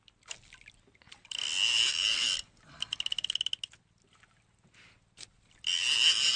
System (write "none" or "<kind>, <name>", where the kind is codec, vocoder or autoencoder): none